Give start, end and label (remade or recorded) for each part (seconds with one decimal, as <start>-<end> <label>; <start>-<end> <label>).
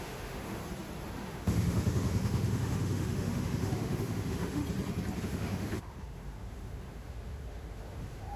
0.0-0.6 remade; 0.6-1.2 recorded; 1.2-4.6 remade; 4.6-5.2 recorded; 5.2-8.4 remade